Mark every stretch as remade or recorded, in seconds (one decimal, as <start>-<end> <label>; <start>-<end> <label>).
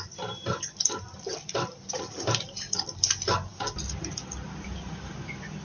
0.0-5.6 recorded